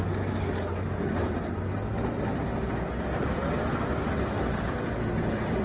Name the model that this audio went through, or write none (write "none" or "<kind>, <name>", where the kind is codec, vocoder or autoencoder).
none